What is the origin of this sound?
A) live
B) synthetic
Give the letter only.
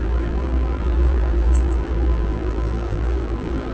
B